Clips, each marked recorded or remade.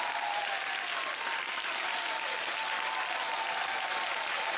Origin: remade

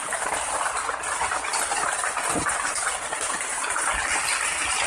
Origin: recorded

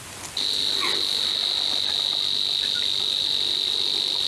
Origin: recorded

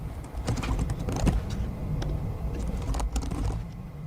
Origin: remade